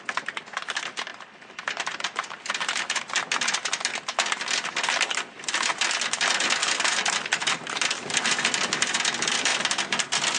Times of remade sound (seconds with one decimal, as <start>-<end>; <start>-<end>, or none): 1.1-3.2; 6.6-8.4